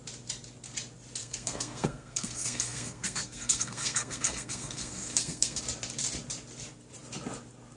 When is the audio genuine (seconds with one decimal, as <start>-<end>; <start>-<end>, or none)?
0.0-1.2; 5.6-7.8